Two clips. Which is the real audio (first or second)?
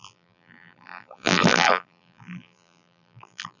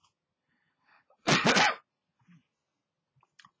second